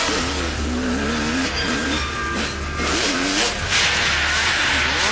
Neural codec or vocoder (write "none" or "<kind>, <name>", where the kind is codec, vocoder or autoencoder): none